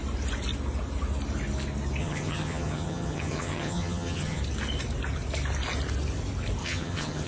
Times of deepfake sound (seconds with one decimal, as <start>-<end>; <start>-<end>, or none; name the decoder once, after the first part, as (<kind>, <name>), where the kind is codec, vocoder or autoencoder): 2.0-4.4 (vocoder, HiFi-GAN); 6.6-7.3